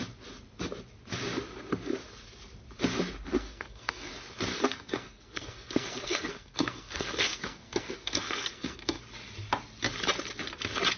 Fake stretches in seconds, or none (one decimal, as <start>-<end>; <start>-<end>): 3.3-4.1; 4.5-9.0